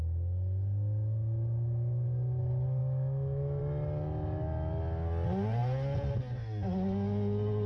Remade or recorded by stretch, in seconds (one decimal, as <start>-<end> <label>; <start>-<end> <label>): 0.0-2.8 recorded; 2.8-3.6 remade; 3.6-7.7 recorded